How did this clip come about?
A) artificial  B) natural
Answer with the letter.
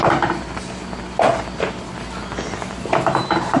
B